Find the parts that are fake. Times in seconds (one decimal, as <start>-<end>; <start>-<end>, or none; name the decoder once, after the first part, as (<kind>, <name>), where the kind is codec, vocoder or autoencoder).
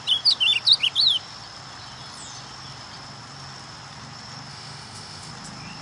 4.5-5.3 (autoencoder, DAC-VAE)